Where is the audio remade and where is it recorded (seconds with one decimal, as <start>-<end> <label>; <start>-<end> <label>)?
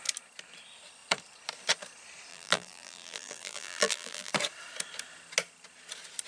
0.0-2.3 recorded; 2.3-4.3 remade; 4.3-6.3 recorded